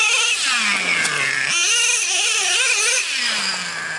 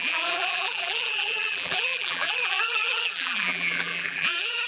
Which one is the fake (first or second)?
second